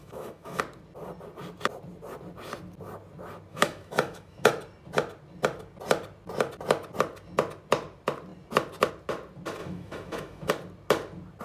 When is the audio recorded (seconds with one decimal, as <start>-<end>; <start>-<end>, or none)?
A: 0.6-3.5; 4.5-9.6; 10.5-11.4